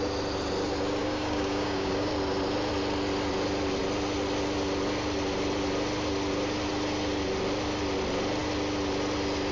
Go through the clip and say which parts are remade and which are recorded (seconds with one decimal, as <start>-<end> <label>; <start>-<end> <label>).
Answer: 0.0-1.0 recorded; 1.0-2.1 remade; 2.1-9.5 recorded